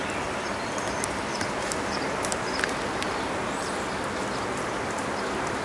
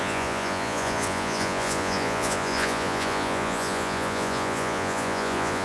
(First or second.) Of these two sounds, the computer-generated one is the second